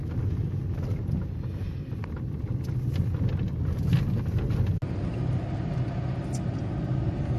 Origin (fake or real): real